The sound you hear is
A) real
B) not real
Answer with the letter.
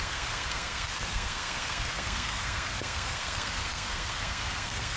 B